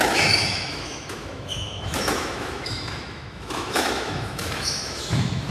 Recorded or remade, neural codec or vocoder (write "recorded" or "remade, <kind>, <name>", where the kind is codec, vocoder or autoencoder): remade, autoencoder, DAC-VAE